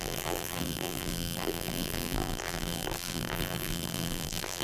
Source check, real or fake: fake